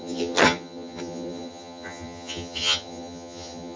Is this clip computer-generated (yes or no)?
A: yes